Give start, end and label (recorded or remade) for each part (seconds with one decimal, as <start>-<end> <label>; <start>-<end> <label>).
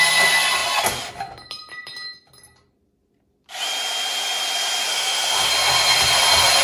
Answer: 0.0-4.9 recorded; 4.9-5.5 remade; 5.5-6.6 recorded